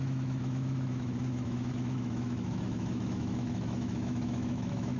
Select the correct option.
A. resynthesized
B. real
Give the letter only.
A